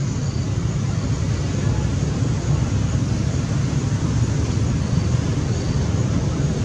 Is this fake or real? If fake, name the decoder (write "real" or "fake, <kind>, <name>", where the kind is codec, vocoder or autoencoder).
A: real